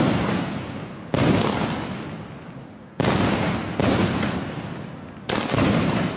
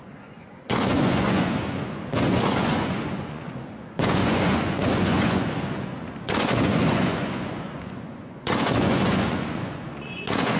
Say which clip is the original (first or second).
first